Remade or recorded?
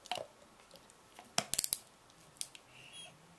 recorded